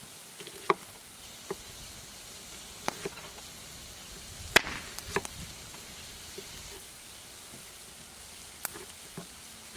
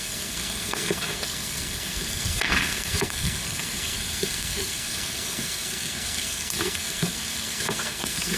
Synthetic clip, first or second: second